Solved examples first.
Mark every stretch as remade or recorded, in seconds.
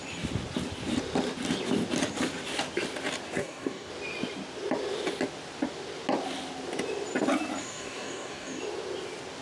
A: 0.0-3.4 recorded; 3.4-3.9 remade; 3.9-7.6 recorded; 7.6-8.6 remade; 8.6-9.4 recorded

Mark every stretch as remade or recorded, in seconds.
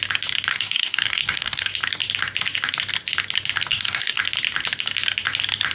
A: 0.0-0.5 recorded; 0.5-1.7 remade; 1.7-3.7 recorded; 3.7-4.2 remade; 4.2-5.7 recorded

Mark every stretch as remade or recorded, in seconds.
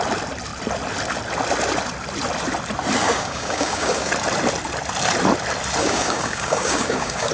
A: 0.0-3.0 recorded; 3.0-4.1 remade; 4.1-5.8 recorded; 5.8-7.3 remade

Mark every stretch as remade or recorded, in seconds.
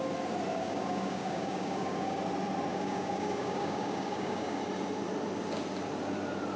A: 0.0-0.5 recorded; 0.5-2.2 remade; 2.2-2.7 recorded; 2.7-4.6 remade; 4.6-6.6 recorded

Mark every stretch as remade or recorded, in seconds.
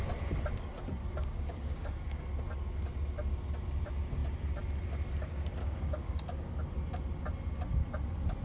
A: 0.0-1.0 recorded; 1.0-2.2 remade; 2.2-5.6 recorded; 5.6-6.6 remade; 6.6-8.4 recorded